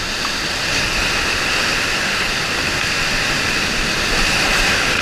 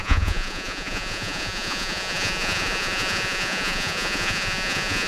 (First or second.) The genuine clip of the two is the first